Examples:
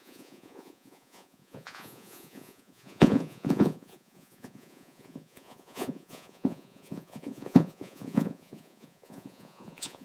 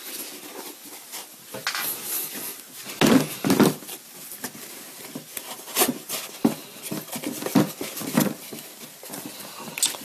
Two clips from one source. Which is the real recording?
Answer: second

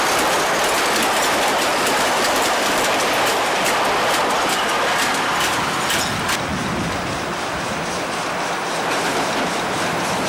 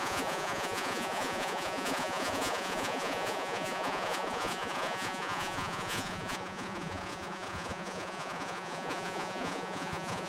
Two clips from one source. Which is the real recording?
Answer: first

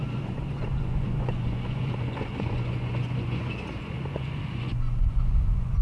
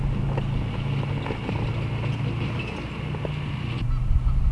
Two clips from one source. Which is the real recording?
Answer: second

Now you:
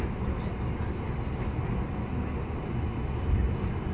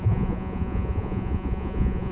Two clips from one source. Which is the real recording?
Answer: first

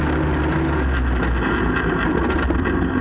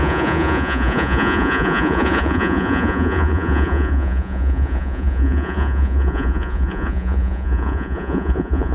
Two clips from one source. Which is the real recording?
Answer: first